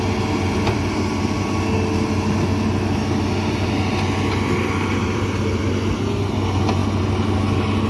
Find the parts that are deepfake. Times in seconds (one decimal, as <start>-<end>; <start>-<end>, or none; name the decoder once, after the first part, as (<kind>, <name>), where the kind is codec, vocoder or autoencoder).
5.0-5.7 (vocoder, BigVGAN v2)